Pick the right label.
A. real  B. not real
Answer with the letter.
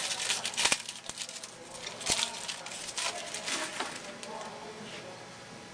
A